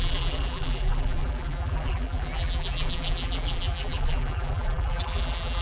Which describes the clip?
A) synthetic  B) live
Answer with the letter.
A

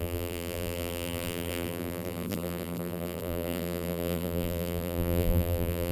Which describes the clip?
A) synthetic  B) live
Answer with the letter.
A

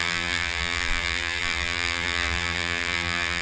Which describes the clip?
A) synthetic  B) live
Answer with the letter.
A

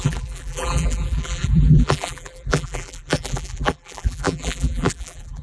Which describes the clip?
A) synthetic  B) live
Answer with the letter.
A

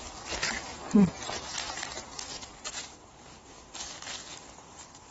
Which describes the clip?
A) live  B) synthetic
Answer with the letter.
A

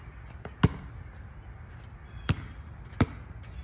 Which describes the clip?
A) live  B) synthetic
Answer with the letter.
A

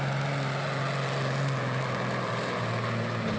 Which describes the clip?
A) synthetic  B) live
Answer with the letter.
B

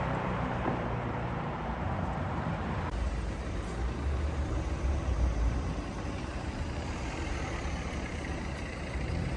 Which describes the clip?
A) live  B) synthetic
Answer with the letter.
B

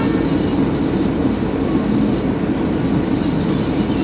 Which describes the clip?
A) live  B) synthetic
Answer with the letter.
A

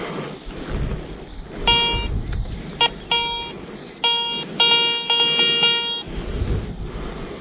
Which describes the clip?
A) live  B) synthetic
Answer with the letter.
A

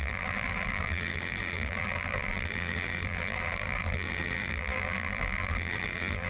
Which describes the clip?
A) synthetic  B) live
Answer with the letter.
A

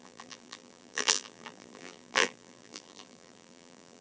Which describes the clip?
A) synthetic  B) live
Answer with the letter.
A